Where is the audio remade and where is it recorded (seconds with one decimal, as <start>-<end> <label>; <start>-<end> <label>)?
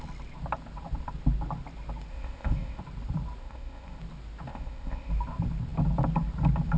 0.0-2.1 recorded; 2.1-2.8 remade; 2.8-3.4 recorded; 3.4-4.0 remade; 4.0-4.5 recorded; 4.5-5.1 remade; 5.1-6.8 recorded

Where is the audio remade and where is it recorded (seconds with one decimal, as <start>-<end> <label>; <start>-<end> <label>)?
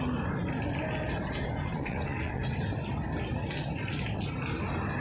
0.0-1.7 recorded; 1.7-2.4 remade; 2.4-5.0 recorded